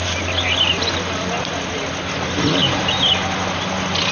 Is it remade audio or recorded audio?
recorded